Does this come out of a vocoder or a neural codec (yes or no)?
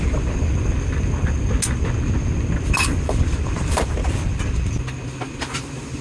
no